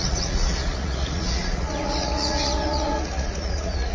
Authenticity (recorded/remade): remade